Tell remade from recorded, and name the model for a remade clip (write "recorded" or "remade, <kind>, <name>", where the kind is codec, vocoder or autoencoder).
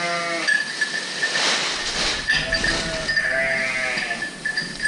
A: recorded